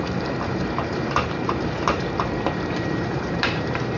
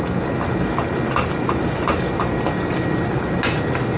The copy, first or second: first